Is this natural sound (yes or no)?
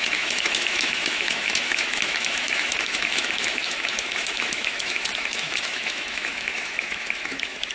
no